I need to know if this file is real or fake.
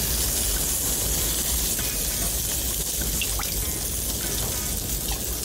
real